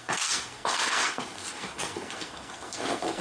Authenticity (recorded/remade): remade